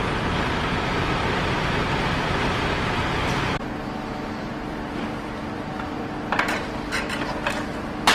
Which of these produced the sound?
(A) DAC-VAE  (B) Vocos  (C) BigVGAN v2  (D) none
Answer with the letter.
C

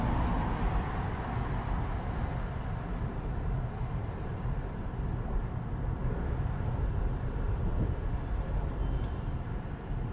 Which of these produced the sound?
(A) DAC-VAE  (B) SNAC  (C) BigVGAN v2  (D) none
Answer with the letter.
D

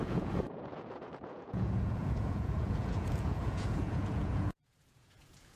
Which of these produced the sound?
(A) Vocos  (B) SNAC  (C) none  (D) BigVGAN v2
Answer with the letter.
A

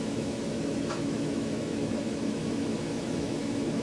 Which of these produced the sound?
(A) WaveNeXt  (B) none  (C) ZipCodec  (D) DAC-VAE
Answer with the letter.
D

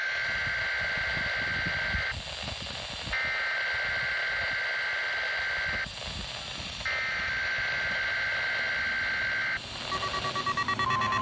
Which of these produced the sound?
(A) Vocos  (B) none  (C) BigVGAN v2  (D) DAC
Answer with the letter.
B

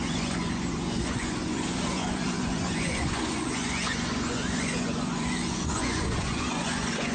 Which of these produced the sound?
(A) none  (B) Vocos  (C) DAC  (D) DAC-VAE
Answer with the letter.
B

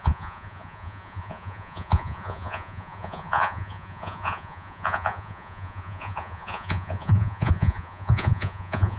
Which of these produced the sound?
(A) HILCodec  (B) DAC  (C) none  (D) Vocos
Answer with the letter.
D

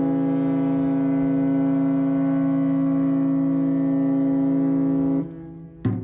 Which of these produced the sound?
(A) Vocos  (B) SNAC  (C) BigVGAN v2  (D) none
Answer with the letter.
D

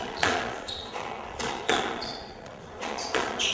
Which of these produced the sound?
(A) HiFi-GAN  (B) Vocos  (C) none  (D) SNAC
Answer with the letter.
B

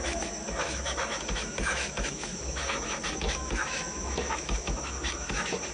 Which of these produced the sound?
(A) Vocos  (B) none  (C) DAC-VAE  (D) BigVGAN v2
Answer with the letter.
C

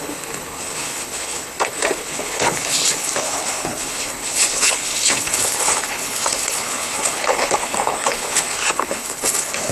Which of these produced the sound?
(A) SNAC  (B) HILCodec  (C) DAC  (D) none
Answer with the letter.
B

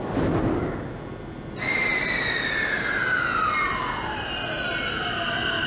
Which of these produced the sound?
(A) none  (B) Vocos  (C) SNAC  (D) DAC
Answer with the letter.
A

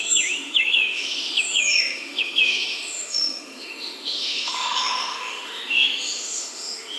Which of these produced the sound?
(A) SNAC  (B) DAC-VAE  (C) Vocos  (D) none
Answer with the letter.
B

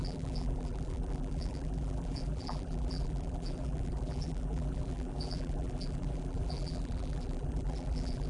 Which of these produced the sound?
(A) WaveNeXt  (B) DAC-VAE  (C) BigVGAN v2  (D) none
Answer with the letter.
C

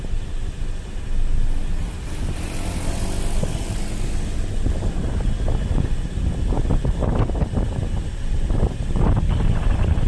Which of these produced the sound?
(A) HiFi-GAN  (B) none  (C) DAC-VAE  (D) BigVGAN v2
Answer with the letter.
B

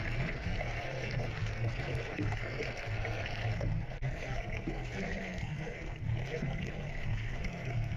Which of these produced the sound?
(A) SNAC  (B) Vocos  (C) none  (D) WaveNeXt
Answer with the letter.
A